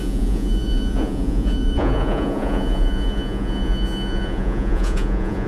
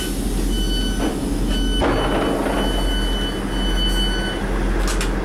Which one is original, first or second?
second